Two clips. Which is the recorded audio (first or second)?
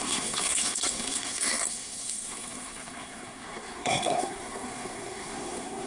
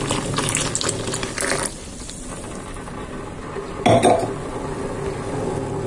second